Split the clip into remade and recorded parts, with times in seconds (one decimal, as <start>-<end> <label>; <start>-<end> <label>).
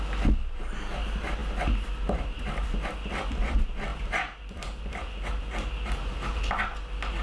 0.0-3.9 recorded; 3.9-6.4 remade; 6.4-7.2 recorded